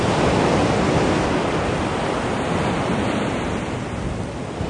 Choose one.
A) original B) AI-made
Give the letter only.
A